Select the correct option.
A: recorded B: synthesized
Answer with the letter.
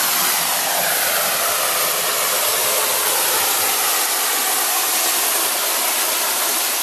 A